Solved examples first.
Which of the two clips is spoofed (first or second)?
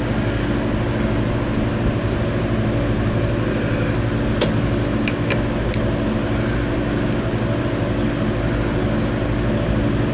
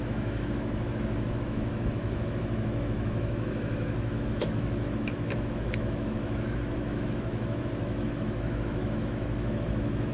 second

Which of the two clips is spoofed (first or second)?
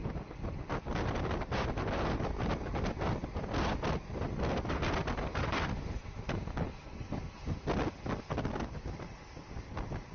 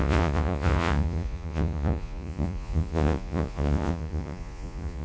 second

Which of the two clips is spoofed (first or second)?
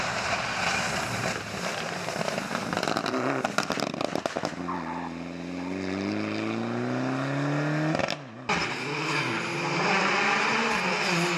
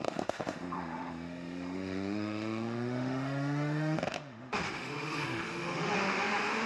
second